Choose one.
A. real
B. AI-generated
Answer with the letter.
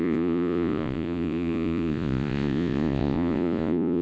B